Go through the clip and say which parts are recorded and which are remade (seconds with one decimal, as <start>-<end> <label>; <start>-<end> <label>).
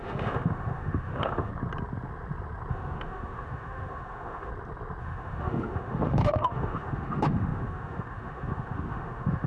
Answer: 0.0-1.5 remade; 1.5-2.7 recorded; 2.7-4.5 remade; 4.5-5.0 recorded; 5.0-9.5 remade